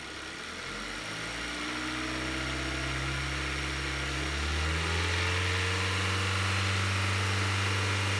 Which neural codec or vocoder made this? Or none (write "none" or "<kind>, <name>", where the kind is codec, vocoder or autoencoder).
none